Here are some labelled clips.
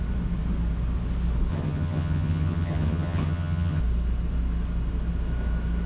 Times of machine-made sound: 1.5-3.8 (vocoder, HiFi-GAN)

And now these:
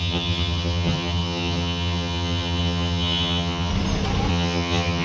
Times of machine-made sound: 0.0-3.7 (vocoder, HiFi-GAN); 4.3-5.0

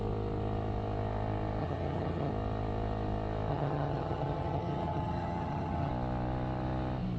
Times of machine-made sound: 1.6-2.3 (vocoder, HiFi-GAN); 3.5-5.9